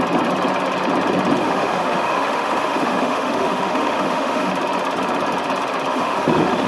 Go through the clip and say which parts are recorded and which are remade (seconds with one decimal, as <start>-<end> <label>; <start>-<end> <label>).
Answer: 0.0-1.4 recorded; 1.4-4.5 remade; 4.5-5.9 recorded; 5.9-6.7 remade